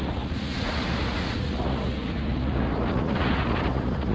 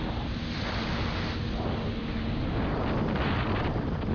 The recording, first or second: second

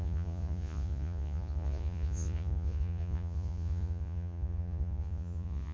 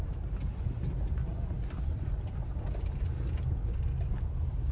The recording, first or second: second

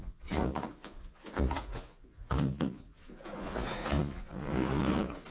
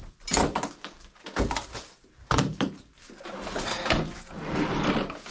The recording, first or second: second